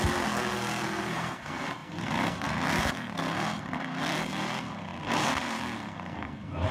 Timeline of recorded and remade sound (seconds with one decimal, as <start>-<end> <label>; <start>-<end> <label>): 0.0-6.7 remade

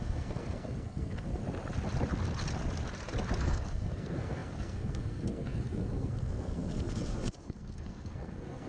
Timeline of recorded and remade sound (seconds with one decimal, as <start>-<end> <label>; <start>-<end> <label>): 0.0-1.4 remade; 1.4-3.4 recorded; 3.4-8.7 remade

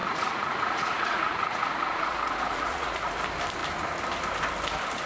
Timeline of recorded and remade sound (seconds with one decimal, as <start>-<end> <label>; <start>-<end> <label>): 0.0-3.1 remade; 3.1-5.1 recorded